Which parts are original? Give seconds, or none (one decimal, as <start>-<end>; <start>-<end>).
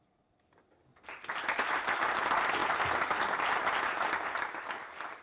0.0-5.2